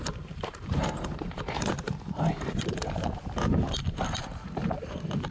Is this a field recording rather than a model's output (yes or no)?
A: no